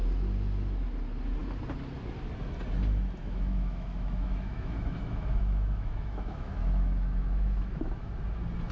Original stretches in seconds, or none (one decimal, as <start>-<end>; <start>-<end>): 0.0-3.2; 8.1-8.7